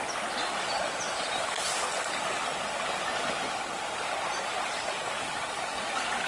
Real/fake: real